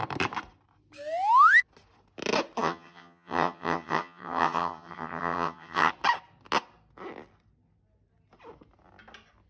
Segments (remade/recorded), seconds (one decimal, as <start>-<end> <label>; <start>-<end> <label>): 0.0-2.6 recorded; 2.6-5.9 remade; 5.9-9.5 recorded